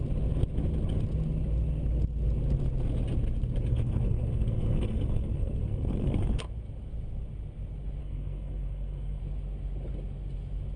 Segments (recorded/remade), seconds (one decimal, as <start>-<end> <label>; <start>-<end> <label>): 0.0-3.7 recorded; 3.7-6.4 remade; 6.4-8.0 recorded; 8.0-9.2 remade; 9.2-10.8 recorded